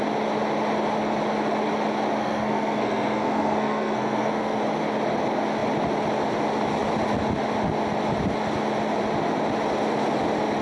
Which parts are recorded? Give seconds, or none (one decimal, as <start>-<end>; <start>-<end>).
0.0-2.2; 4.6-10.6